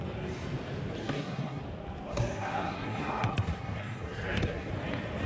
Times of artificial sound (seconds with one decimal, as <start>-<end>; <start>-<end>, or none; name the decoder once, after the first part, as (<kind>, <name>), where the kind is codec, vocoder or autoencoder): 1.0-1.6 (codec, SNAC); 2.1-4.7